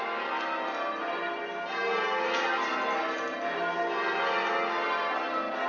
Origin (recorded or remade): recorded